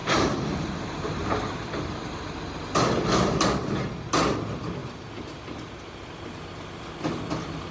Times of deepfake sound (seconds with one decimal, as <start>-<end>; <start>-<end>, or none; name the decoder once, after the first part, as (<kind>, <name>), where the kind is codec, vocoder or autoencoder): 0.0-2.2 (vocoder, BigVGAN v2); 4.8-5.6